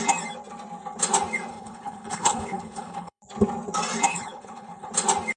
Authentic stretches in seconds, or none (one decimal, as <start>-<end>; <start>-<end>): 0.0-1.5; 3.2-4.1; 4.9-5.4